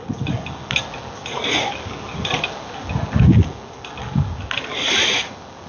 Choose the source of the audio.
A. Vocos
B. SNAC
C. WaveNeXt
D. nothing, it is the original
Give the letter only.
D